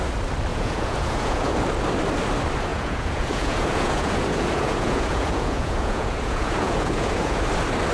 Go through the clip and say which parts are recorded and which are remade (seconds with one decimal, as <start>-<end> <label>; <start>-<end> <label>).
0.0-0.5 recorded; 0.5-1.6 remade; 1.6-2.7 recorded; 2.7-7.4 remade; 7.4-7.9 recorded